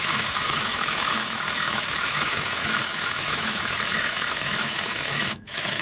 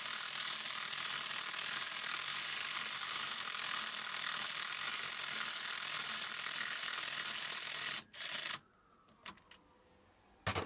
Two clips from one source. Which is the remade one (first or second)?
first